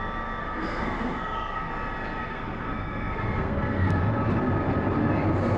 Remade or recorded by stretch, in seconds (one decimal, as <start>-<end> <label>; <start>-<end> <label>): 0.0-0.4 recorded; 0.4-1.7 remade; 1.7-2.2 recorded; 2.2-4.0 remade; 4.0-5.6 recorded